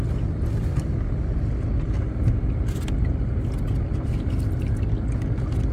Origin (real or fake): real